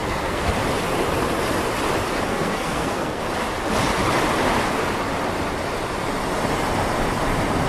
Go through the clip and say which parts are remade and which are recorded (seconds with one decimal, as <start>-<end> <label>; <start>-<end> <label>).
0.0-0.5 remade; 0.5-2.3 recorded; 2.3-3.2 remade; 3.2-7.7 recorded